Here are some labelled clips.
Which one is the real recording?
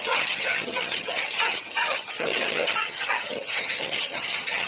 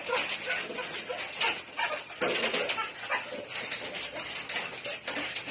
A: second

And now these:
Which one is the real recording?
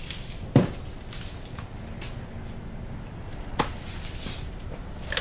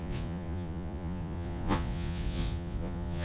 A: first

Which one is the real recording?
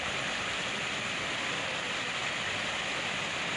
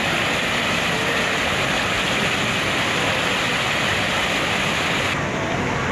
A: second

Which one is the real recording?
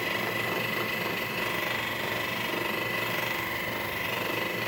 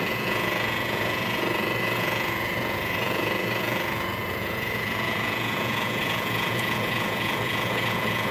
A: first